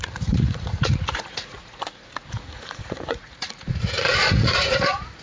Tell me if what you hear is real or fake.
fake